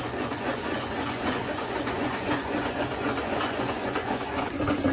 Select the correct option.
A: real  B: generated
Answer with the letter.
B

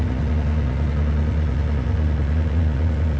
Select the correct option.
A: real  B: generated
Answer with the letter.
B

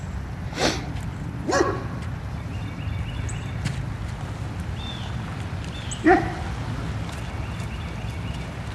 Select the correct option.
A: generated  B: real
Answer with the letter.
B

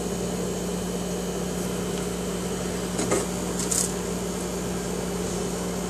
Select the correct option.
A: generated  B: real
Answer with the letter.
B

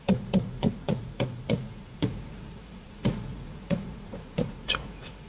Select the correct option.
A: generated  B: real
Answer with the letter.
A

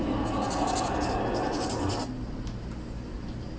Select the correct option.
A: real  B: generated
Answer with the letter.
A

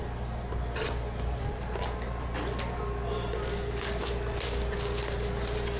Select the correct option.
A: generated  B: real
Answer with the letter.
B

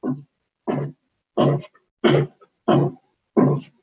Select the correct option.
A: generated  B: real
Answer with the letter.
B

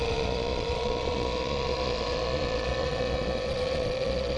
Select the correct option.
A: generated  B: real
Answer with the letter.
A